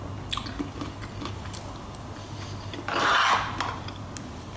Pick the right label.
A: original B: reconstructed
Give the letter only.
A